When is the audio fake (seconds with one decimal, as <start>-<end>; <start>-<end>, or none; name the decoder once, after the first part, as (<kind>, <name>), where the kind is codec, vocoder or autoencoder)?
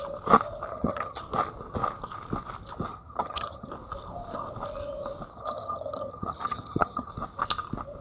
0.7-1.2 (vocoder, HiFi-GAN); 2.9-3.7; 5.3-7.1